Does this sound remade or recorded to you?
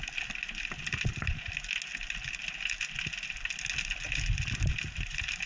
recorded